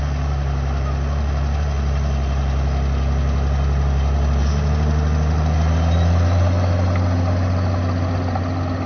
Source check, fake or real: real